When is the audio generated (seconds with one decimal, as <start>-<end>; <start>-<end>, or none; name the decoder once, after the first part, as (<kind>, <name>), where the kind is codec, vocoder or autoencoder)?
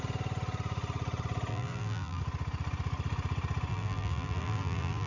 1.5-2.2 (vocoder, BigVGAN v2); 3.7-5.1